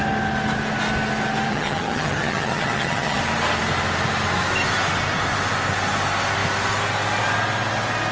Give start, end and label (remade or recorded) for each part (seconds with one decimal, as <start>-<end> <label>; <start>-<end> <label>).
0.0-1.5 recorded; 1.5-3.2 remade; 3.2-8.1 recorded